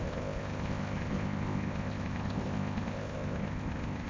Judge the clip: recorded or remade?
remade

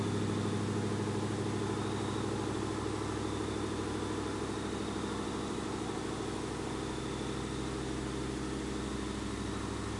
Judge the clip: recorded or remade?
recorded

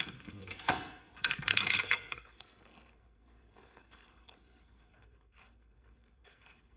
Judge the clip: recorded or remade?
remade